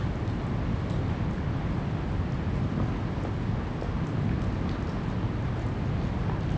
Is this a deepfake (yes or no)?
no